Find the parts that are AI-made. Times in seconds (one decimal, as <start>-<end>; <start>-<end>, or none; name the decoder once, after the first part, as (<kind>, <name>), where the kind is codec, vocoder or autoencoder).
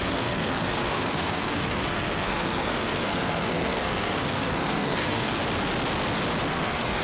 0.0-5.4 (codec, SNAC); 6.5-7.0